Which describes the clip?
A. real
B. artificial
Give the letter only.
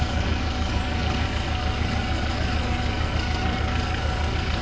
B